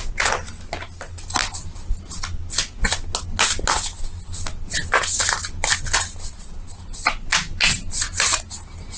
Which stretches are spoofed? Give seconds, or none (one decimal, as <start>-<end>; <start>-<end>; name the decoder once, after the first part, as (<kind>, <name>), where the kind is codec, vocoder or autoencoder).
none